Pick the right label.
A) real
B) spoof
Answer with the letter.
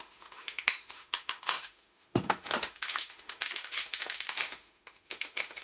B